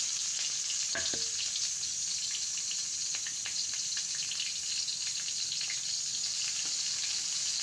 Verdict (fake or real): real